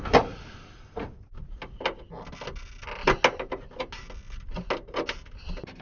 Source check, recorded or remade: recorded